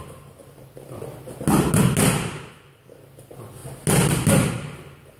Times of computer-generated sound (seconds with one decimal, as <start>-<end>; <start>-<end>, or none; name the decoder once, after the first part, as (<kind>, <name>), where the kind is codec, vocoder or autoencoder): none